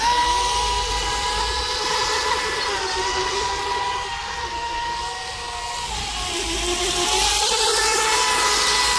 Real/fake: real